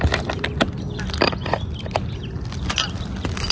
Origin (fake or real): real